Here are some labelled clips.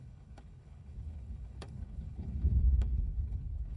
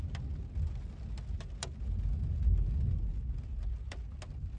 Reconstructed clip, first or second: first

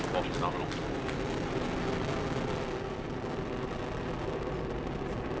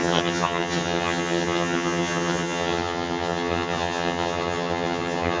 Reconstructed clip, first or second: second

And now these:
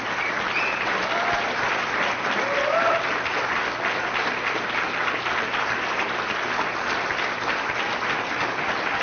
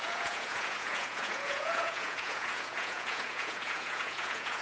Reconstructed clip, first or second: second